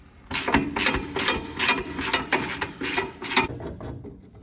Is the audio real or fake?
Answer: real